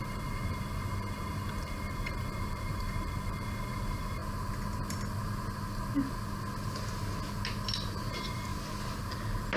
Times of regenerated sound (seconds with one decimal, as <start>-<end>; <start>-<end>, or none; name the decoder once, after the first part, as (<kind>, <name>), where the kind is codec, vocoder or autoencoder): 0.0-4.2 (vocoder, BigVGAN v2); 8.1-8.5